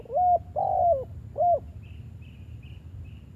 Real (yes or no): yes